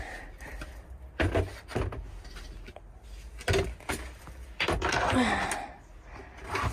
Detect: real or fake real